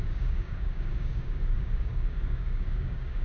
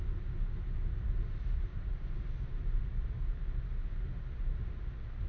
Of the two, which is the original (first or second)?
second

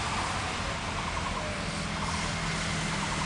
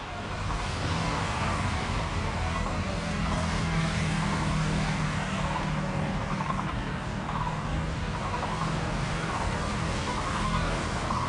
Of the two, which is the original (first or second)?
first